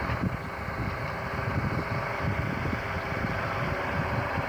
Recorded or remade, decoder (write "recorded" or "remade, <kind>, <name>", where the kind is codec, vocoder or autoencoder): remade, vocoder, BigVGAN v2